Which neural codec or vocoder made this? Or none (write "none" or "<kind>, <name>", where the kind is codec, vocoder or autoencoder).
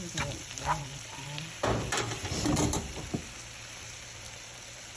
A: vocoder, BigVGAN v2